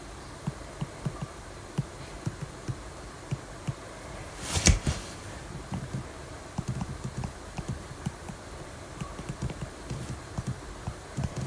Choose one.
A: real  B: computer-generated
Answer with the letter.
B